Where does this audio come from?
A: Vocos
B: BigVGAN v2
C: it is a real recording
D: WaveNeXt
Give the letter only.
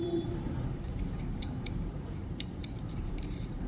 B